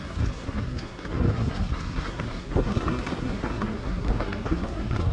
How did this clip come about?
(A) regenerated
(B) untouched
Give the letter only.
A